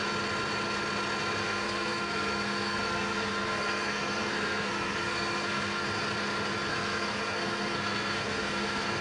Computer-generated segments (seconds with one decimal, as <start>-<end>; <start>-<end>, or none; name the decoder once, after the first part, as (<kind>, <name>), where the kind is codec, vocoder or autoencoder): 1.4-5.8 (codec, SNAC); 6.7-9.0

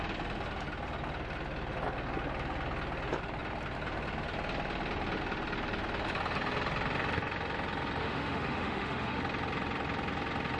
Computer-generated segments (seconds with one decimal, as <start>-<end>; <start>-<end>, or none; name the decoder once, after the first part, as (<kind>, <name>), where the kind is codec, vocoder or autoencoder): 8.0-9.2 (autoencoder, DAC-VAE)

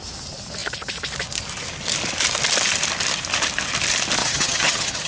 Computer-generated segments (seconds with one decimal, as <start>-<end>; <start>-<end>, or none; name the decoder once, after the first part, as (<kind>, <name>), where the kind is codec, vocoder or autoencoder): 4.2-5.1 (vocoder, HiFi-GAN)

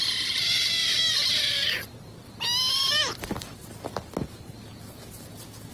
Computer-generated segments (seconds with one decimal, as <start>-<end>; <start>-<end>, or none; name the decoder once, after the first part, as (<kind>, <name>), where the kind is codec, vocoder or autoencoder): 0.8-1.5 (vocoder, BigVGAN v2)

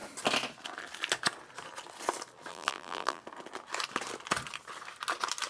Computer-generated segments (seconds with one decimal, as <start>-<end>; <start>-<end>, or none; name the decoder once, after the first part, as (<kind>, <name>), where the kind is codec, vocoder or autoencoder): 2.5-3.2 (vocoder, BigVGAN v2)

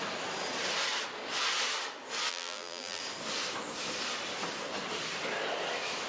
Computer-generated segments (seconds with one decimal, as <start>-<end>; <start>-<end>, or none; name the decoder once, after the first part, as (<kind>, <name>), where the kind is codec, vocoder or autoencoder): 2.3-3.0 (vocoder, BigVGAN v2)

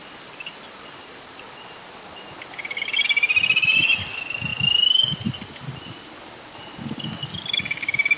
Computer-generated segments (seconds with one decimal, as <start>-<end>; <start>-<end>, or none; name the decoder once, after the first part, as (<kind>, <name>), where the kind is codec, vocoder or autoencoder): none

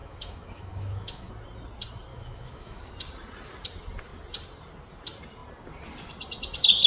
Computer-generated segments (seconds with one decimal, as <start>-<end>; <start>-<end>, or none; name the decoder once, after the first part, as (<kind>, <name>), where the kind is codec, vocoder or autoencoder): 0.0-1.3 (autoencoder, DAC-VAE); 2.1-2.9